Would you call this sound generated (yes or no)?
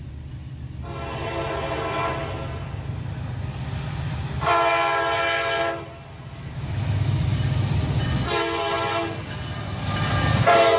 no